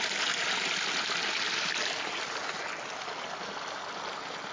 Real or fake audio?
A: real